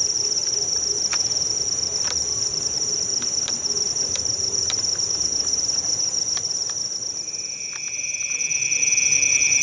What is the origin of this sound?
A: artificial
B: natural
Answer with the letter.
B